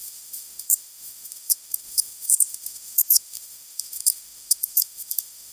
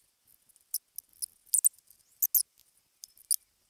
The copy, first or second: first